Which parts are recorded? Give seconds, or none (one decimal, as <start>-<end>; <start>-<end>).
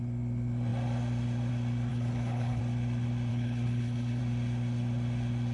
0.0-1.9; 2.6-3.3; 4.2-5.5